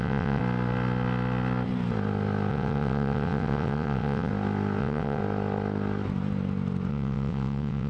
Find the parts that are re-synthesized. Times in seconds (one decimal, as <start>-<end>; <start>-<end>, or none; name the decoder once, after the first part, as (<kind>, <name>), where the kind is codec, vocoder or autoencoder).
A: 0.0-0.4 (vocoder, WaveNeXt); 2.5-4.3; 4.8-5.2; 6.9-7.9